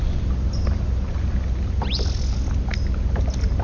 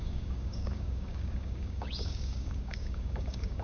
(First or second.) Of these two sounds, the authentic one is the first